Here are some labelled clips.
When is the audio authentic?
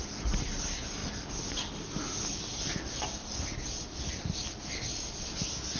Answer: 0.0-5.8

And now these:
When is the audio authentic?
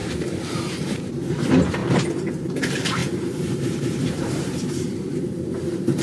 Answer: 1.8-2.3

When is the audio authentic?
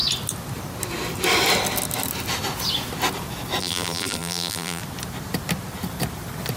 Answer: 0.0-3.6; 4.8-6.6